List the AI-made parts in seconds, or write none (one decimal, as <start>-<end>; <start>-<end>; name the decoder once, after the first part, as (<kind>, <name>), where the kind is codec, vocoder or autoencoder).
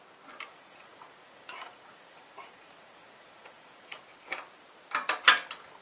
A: 0.5-4.0 (vocoder, Vocos)